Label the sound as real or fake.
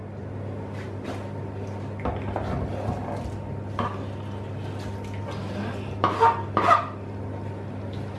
real